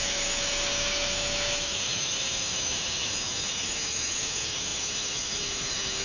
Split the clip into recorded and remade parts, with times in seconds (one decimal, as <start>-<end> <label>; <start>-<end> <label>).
0.0-6.0 remade